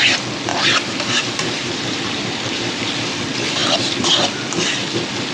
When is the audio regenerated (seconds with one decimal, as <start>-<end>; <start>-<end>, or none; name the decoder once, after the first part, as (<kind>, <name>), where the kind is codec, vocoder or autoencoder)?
0.5-2.8 (vocoder, BigVGAN v2)